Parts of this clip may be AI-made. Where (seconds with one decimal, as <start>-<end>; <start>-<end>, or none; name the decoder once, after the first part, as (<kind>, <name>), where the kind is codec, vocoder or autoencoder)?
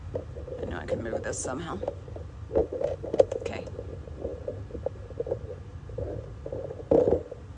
2.6-3.5 (vocoder, BigVGAN v2)